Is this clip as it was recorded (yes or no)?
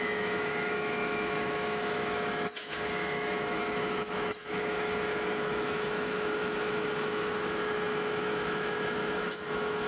no